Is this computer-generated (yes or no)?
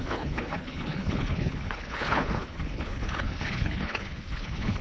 yes